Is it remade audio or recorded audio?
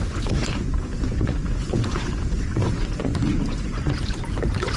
remade